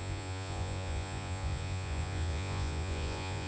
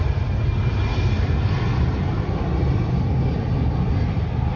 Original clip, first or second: second